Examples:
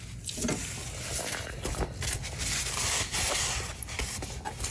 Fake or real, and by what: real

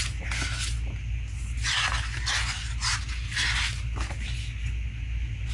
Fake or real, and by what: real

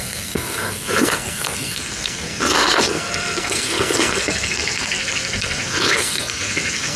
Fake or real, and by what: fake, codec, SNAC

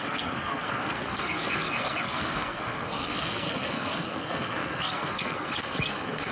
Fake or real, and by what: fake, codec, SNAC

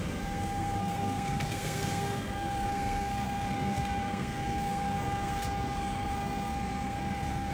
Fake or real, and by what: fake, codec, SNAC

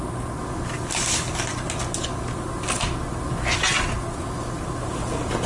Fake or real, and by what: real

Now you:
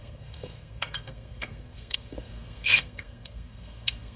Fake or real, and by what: fake, codec, SNAC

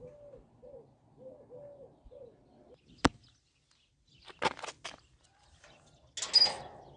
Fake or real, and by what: real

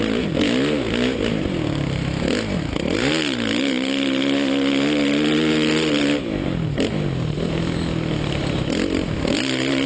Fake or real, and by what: real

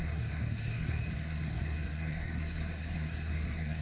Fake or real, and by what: fake, codec, SNAC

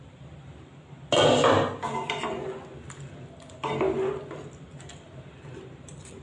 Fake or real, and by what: real